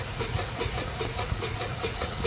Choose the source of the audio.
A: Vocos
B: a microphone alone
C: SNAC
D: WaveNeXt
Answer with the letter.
A